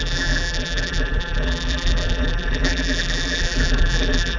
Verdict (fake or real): fake